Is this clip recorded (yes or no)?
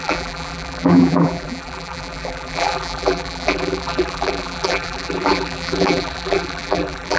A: no